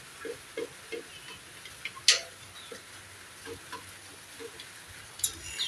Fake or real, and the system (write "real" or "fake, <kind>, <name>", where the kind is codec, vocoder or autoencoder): real